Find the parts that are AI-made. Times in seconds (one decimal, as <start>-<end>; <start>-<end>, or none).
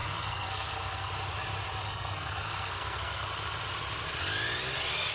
0.0-1.1; 1.8-3.3